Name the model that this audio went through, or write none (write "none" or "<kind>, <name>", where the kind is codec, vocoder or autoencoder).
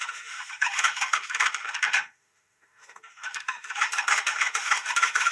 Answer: autoencoder, DAC-VAE